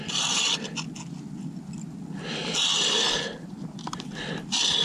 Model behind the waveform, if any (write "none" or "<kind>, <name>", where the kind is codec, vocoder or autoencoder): none